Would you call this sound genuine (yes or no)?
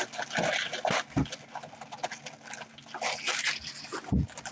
yes